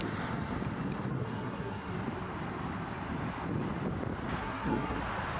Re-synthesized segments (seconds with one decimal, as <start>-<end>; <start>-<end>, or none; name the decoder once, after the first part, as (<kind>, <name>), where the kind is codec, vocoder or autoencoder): 1.1-1.9 (codec, SNAC); 4.4-5.0